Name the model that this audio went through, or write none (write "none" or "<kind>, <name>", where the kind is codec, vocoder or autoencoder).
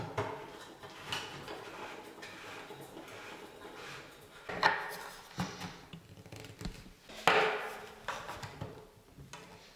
none